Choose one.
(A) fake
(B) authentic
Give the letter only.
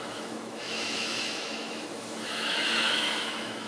A